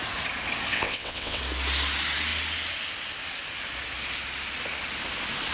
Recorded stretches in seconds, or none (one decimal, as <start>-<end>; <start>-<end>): 0.0-0.7; 1.4-5.5